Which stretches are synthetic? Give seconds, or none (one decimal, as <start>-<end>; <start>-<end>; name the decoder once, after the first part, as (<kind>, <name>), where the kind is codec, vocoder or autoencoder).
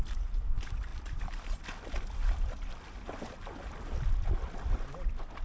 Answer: none